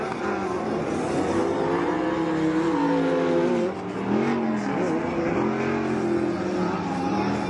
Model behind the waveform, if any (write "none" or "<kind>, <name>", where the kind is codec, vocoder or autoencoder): none